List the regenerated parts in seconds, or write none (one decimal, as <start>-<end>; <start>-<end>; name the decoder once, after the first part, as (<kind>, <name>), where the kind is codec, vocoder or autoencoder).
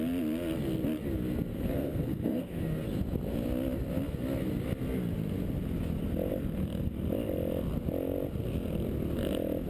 1.5-2.6 (codec, SNAC)